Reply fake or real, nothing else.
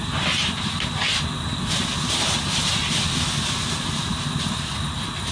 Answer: real